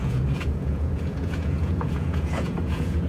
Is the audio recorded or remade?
remade